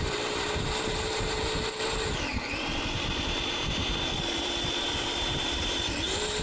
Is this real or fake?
fake